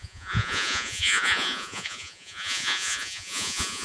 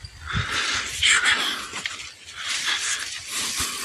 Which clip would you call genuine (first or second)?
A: second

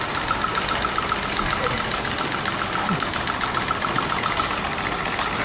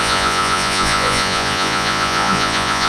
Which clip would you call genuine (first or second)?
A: first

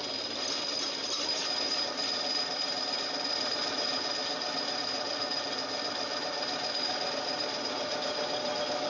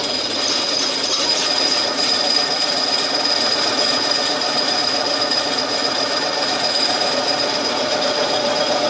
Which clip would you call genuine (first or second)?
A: first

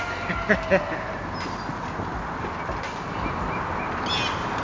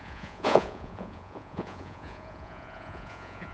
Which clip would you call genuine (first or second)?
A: first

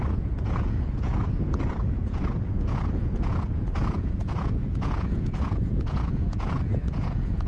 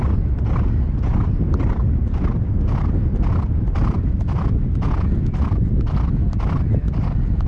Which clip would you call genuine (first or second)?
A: second